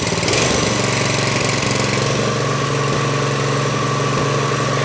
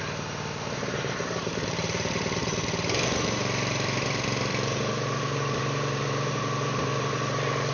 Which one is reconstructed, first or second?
second